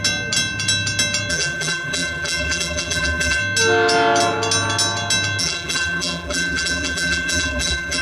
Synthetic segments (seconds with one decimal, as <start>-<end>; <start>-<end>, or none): 1.3-3.4; 5.4-8.0